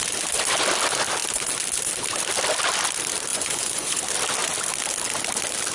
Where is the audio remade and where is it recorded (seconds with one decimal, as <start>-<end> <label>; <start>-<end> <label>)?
0.0-3.3 recorded; 3.3-4.0 remade; 4.0-5.7 recorded